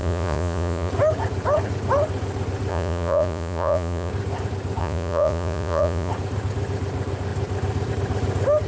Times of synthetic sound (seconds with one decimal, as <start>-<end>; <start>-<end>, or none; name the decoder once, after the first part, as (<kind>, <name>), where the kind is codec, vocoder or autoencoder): 0.0-0.9 (vocoder, Vocos); 2.7-4.1; 4.8-6.1